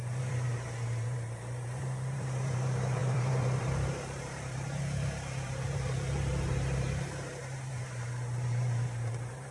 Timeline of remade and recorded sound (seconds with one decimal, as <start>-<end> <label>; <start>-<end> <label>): 0.0-9.5 remade